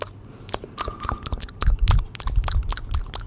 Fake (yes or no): no